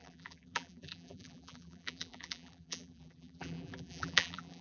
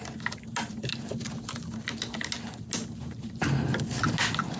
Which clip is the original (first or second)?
second